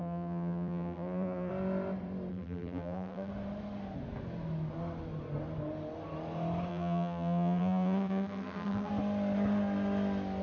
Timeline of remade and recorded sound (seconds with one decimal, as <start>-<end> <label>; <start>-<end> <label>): 0.0-1.5 remade; 1.5-2.3 recorded; 2.3-3.3 remade; 3.3-6.7 recorded; 6.7-8.9 remade; 8.9-10.4 recorded